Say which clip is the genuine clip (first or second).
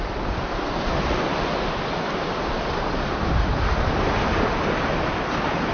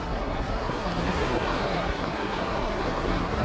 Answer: first